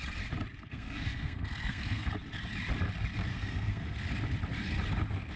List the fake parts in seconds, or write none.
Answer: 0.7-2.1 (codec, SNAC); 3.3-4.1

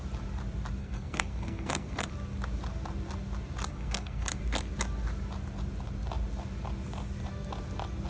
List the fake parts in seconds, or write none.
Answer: 0.8-2.1 (codec, SNAC); 3.7-4.4

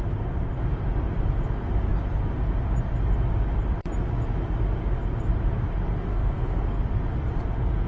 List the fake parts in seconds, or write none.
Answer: 6.1-6.8 (codec, SNAC)

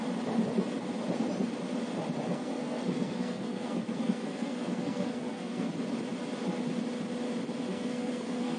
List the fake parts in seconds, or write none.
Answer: 2.3-5.7 (codec, SNAC); 7.7-8.6

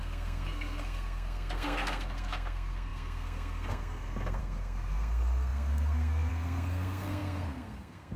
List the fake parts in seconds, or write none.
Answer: 0.0-8.2 (codec, SNAC)

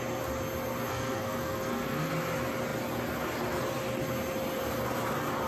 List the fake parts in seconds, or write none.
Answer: 0.9-2.1 (codec, SNAC)

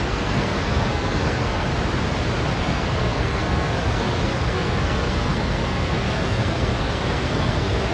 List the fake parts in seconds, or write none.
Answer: 0.0-1.7 (codec, SNAC); 2.5-7.9

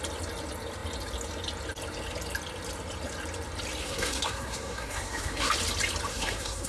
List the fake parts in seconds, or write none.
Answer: 3.8-5.5 (codec, SNAC); 6.1-6.7